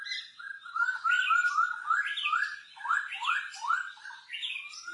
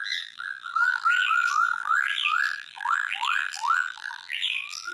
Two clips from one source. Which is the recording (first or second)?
first